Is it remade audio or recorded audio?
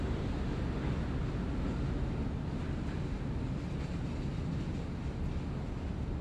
recorded